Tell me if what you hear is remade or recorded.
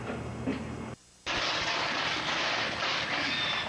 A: recorded